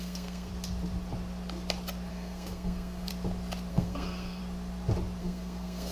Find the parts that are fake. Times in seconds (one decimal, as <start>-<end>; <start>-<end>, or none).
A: 0.0-0.5; 2.1-3.1; 3.7-4.4; 5.2-5.9